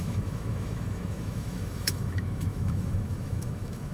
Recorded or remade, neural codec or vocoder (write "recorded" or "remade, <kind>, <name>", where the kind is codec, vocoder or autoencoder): remade, autoencoder, DAC-VAE